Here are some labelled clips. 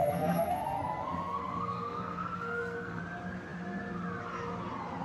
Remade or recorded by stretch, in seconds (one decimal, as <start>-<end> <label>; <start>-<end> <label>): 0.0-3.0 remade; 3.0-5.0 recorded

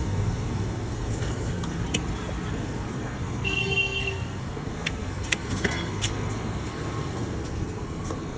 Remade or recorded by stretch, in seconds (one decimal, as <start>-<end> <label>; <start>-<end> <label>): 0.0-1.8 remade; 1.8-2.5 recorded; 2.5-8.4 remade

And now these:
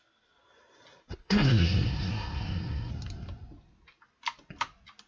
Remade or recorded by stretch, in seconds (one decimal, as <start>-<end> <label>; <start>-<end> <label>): 0.0-1.2 recorded; 1.2-2.9 remade; 2.9-5.1 recorded